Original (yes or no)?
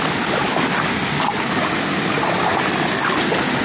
yes